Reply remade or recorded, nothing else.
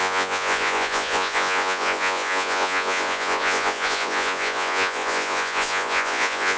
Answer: remade